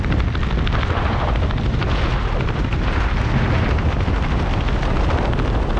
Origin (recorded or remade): recorded